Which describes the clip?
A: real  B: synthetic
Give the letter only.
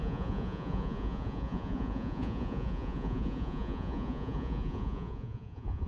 B